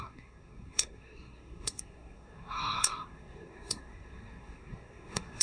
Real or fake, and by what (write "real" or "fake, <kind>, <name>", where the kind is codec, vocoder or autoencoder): fake, codec, SNAC